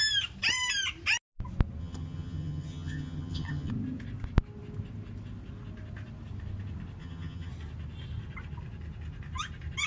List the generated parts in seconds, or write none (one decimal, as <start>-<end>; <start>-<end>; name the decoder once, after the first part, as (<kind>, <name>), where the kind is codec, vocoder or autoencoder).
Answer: 1.8-3.7 (vocoder, HiFi-GAN); 7.0-7.5